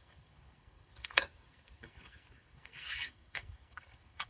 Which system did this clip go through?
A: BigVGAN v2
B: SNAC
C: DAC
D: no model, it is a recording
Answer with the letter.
B